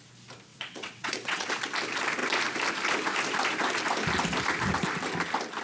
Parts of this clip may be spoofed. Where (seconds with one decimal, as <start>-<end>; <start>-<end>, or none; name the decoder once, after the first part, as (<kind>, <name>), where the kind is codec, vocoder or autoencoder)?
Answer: 0.5-1.5 (vocoder, WaveNeXt)